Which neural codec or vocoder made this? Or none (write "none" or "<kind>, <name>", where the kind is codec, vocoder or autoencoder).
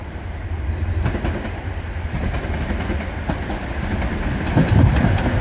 none